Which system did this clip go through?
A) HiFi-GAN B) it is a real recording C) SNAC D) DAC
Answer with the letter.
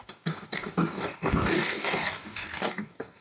D